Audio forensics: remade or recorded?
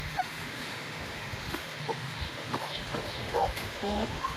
remade